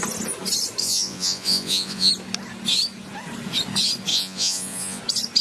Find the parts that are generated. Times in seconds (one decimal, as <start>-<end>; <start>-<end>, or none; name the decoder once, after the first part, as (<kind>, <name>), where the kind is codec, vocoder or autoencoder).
0.8-2.1 (vocoder, Vocos); 4.1-5.0